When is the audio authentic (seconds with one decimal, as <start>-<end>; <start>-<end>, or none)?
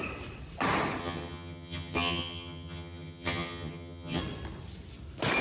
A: 0.0-1.0; 4.2-5.4